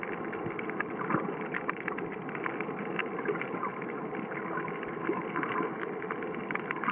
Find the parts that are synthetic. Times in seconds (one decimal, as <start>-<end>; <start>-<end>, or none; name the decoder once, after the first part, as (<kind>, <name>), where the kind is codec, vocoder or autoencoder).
none